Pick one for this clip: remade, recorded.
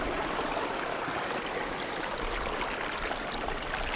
recorded